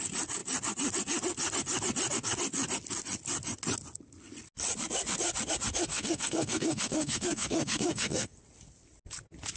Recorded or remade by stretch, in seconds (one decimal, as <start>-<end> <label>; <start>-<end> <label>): 0.0-5.9 recorded; 5.9-8.4 remade; 8.4-9.6 recorded